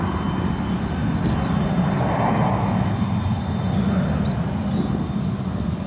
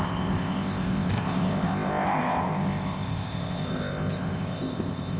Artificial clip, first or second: second